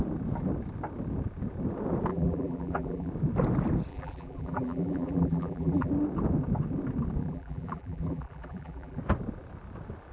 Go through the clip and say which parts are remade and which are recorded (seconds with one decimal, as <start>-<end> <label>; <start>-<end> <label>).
0.0-2.1 recorded; 2.1-3.1 remade; 3.1-3.9 recorded; 3.9-5.9 remade; 5.9-7.2 recorded; 7.2-9.0 remade; 9.0-10.1 recorded